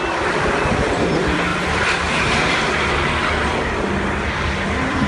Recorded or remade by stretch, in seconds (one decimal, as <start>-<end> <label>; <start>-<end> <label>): 0.0-1.5 recorded; 1.5-2.1 remade; 2.1-5.1 recorded